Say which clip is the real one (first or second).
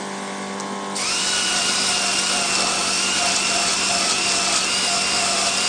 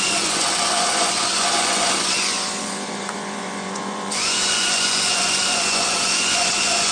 first